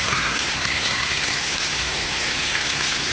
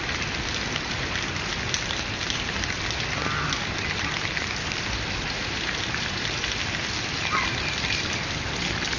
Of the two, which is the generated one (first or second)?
first